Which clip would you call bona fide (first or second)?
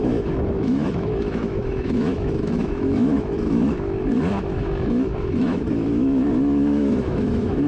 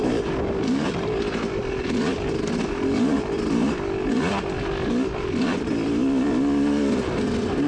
second